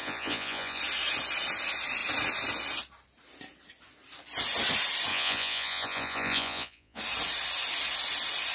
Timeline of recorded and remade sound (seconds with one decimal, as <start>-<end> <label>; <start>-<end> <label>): 0.0-0.8 remade; 0.8-5.1 recorded; 5.1-7.0 remade; 7.0-8.5 recorded